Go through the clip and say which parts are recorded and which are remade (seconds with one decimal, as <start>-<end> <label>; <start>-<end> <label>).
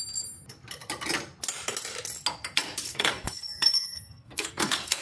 0.0-2.9 recorded; 2.9-5.0 remade